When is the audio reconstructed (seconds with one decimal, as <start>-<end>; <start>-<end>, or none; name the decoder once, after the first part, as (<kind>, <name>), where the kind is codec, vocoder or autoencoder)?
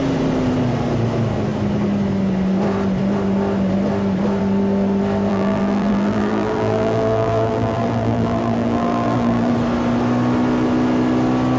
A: 5.3-9.5 (vocoder, BigVGAN v2)